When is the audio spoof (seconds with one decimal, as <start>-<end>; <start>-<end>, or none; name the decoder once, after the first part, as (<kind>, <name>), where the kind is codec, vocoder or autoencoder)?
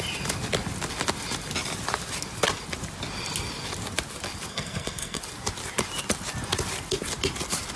4.5-5.2 (codec, SNAC)